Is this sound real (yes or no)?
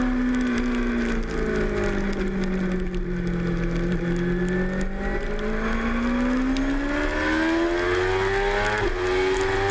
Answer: yes